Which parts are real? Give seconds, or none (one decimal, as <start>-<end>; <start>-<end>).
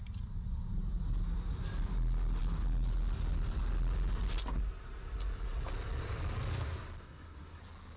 0.0-7.0; 7.6-8.0